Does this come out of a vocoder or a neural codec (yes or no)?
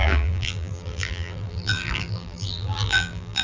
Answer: yes